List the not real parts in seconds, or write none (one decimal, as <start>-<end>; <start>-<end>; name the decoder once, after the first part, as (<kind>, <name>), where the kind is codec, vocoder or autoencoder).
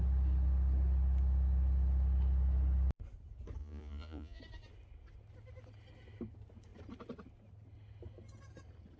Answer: 3.6-4.4 (vocoder, Vocos)